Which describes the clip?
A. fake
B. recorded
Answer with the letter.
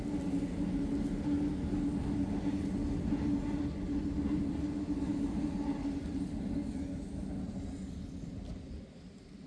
B